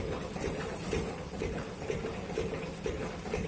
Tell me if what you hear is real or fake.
fake